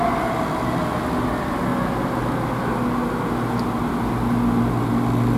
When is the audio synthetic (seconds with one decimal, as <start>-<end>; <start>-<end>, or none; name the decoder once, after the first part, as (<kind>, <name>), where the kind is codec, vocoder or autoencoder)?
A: none